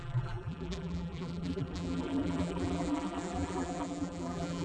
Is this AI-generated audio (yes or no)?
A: yes